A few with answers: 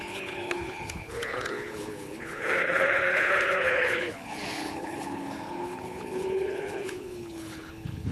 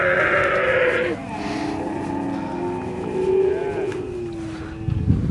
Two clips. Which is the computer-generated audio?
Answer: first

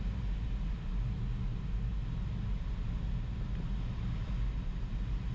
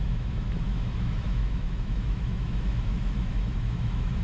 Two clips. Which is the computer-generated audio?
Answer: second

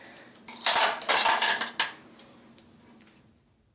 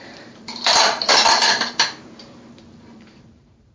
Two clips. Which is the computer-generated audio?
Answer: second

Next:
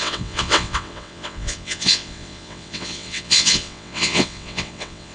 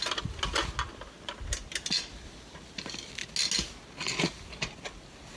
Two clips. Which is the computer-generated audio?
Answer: first